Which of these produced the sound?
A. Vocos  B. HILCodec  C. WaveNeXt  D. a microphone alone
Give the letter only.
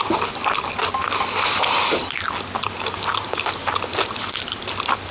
D